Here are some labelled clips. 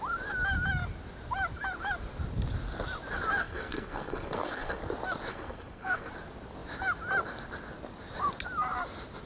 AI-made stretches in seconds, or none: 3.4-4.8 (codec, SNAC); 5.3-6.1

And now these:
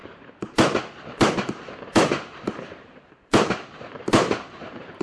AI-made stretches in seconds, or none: 0.0-0.5 (vocoder, BigVGAN v2); 1.9-5.0

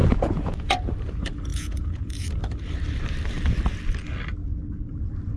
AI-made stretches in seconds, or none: 0.0-0.7 (vocoder, Vocos); 1.5-2.4

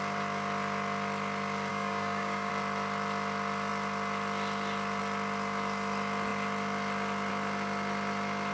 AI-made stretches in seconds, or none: 1.7-2.5 (codec, DAC)

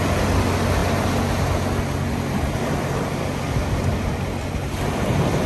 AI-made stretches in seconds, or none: none